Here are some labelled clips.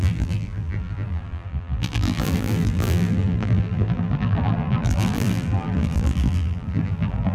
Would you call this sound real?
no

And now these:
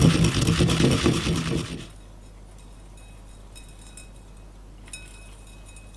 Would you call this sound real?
yes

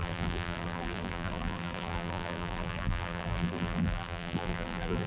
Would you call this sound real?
no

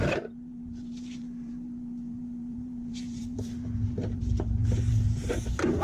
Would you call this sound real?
no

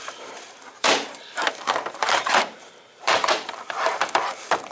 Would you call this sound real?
no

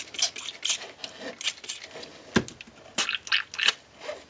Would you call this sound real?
yes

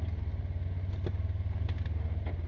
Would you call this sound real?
yes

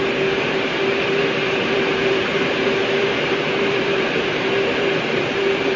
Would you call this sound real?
no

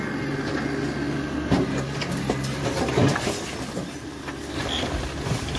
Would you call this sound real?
yes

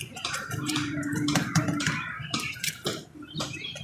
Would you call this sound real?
no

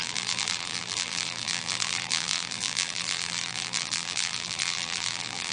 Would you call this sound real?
no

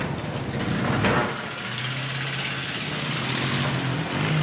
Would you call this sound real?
yes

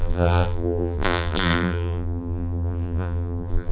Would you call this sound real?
no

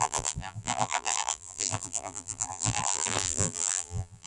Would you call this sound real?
no